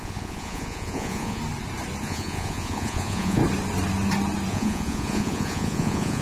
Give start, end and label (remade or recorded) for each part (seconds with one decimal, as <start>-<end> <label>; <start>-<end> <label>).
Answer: 0.0-1.4 remade; 1.4-2.0 recorded; 2.0-3.4 remade; 3.4-4.5 recorded; 4.5-6.2 remade